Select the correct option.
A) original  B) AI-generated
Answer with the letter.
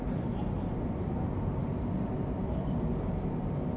A